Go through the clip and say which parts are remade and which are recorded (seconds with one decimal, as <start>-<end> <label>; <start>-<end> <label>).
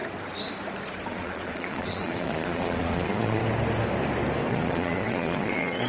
0.0-1.1 recorded; 1.1-3.4 remade; 3.4-4.5 recorded; 4.5-5.9 remade